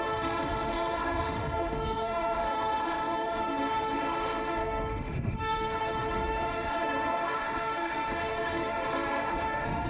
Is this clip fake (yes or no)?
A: yes